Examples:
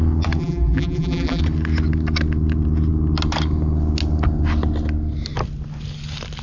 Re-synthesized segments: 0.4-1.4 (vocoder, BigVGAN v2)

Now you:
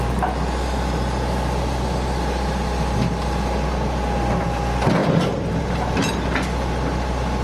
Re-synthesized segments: none

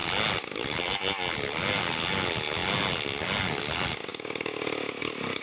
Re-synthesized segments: none

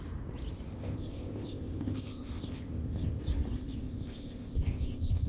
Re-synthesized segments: 0.7-3.2 (codec, ZipCodec); 3.8-5.3

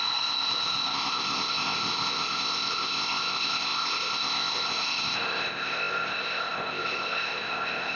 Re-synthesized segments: 0.0-8.0 (codec, ZipCodec)

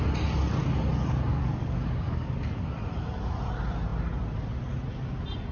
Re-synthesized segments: 1.3-2.6 (codec, DAC)

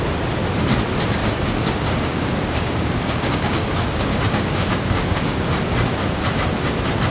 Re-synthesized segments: 1.2-5.5 (codec, DAC)

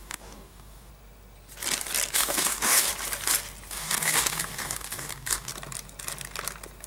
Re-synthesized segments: 0.0-0.9 (codec, DAC); 2.1-2.9; 3.7-5.5